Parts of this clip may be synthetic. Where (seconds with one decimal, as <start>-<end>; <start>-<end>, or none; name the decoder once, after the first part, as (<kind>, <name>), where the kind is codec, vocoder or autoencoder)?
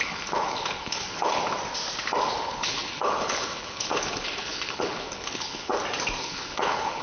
0.0-1.4 (codec, HILCodec); 2.4-5.7; 6.2-7.0